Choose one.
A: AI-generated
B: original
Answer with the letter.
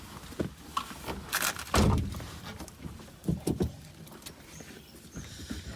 A